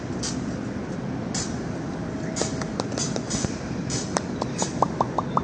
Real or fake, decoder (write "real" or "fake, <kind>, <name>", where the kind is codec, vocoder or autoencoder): real